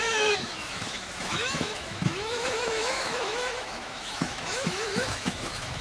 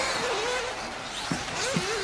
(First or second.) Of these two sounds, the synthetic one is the first